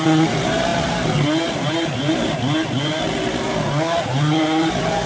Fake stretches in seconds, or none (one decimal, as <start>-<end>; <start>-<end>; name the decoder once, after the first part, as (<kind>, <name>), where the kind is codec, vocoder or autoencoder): none